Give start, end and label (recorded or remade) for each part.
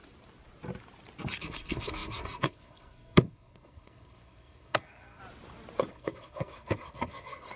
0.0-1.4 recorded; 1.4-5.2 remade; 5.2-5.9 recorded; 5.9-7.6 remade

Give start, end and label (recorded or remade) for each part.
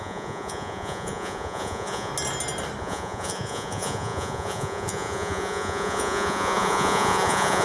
0.0-2.1 remade; 2.1-2.8 recorded; 2.8-7.6 remade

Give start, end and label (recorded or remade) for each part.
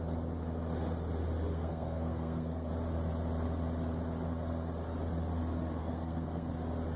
0.0-1.5 recorded; 1.5-2.7 remade; 2.7-5.8 recorded; 5.8-6.5 remade; 6.5-7.0 recorded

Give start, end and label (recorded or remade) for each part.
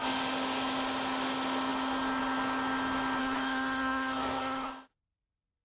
0.0-3.2 recorded; 3.2-4.7 remade; 4.7-5.6 recorded